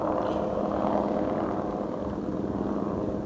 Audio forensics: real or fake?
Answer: real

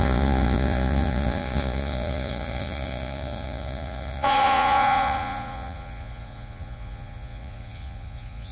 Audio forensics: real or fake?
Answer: fake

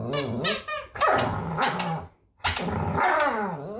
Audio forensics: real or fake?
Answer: real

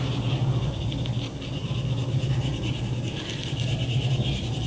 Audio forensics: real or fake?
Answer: real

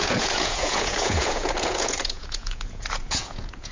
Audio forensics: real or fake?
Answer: fake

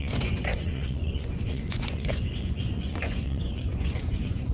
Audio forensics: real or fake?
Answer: fake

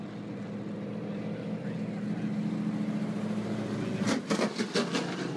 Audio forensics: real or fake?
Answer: real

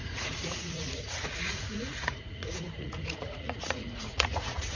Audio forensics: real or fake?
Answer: fake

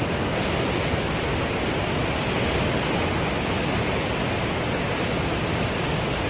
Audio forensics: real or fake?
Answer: real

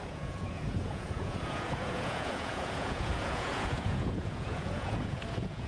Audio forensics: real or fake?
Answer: fake